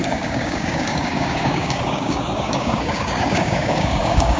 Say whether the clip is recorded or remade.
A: remade